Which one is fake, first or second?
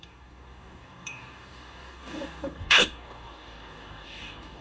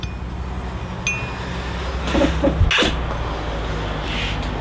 first